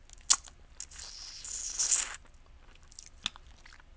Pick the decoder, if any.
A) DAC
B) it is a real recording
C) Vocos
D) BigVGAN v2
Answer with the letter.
B